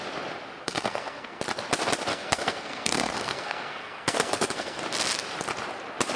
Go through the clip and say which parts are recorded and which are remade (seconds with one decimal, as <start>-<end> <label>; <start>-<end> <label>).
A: 0.0-0.6 recorded; 0.6-1.4 remade; 1.4-2.1 recorded; 2.1-4.8 remade; 4.8-6.2 recorded